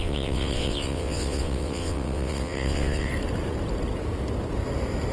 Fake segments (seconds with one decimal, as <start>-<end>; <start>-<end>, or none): 0.0-3.1